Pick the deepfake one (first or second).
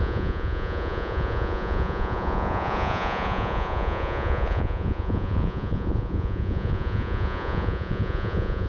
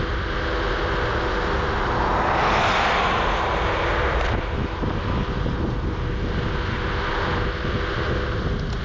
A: first